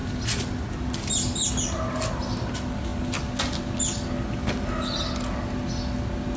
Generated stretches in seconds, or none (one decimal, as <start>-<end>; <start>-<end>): none